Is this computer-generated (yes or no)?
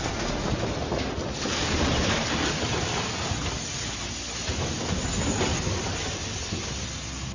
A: no